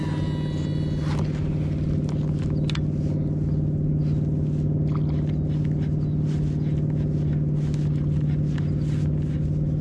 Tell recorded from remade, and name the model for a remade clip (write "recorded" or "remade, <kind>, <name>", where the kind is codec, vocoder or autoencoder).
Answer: recorded